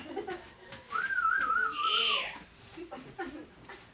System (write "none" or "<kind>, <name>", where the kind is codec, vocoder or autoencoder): none